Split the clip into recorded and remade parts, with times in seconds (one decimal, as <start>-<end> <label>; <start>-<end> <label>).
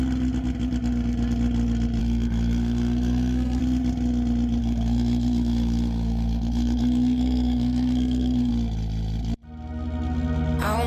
0.0-2.0 recorded; 2.0-3.6 remade; 3.6-4.6 recorded; 4.6-8.5 remade; 8.5-10.9 recorded